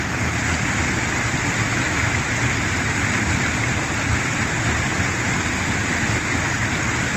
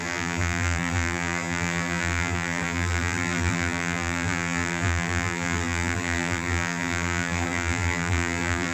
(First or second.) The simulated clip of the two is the second